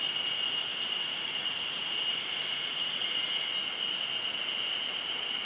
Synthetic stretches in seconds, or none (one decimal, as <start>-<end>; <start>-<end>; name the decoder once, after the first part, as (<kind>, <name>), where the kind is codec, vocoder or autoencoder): 0.7-3.0 (vocoder, BigVGAN v2)